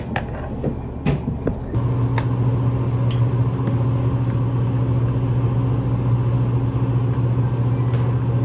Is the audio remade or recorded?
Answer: recorded